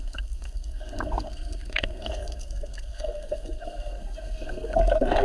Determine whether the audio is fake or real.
fake